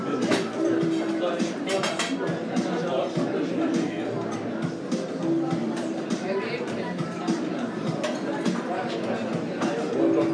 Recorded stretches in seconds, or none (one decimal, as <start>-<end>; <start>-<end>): 1.9-5.6; 8.5-10.3

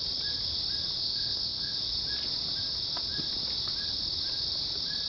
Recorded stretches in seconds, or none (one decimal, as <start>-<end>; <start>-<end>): 0.0-1.0; 1.7-5.1

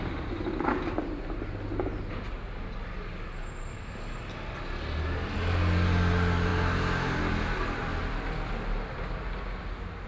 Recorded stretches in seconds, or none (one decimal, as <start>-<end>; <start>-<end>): 0.0-10.1

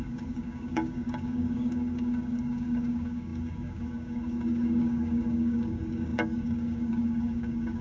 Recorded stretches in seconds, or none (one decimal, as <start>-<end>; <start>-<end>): none